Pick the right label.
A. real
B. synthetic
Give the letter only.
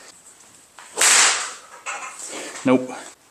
A